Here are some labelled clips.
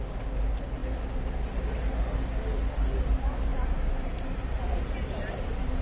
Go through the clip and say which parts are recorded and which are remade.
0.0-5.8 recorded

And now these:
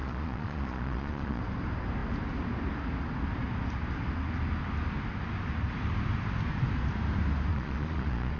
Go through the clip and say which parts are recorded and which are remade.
0.0-1.4 remade; 1.4-7.5 recorded; 7.5-8.4 remade